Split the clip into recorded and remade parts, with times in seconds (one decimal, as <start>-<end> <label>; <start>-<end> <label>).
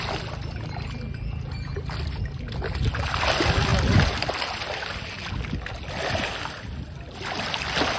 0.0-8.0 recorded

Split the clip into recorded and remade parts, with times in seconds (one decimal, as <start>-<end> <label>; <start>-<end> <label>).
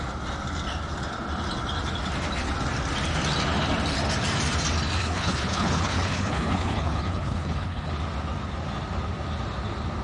0.0-5.0 recorded; 5.0-7.9 remade; 7.9-10.0 recorded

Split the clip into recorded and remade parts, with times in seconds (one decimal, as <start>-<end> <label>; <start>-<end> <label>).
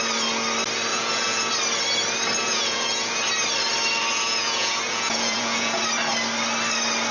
0.0-0.9 recorded; 0.9-1.5 remade; 1.5-2.4 recorded; 2.4-3.2 remade; 3.2-4.1 recorded; 4.1-5.8 remade; 5.8-7.1 recorded